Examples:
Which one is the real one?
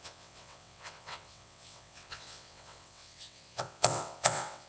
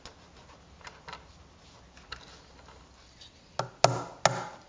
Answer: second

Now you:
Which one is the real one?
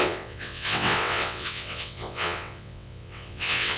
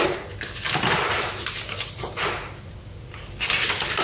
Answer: second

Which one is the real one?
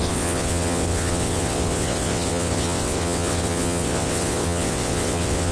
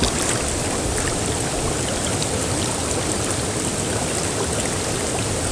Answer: second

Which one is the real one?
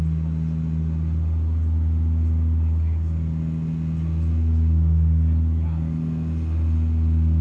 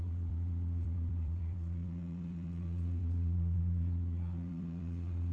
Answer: first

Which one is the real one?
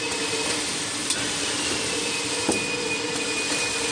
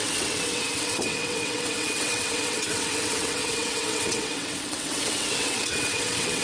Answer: first